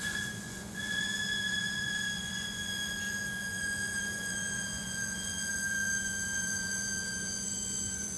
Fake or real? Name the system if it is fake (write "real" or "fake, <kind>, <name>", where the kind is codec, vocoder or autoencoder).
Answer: fake, vocoder, Vocos